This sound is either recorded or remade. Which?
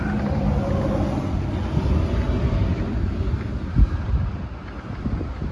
recorded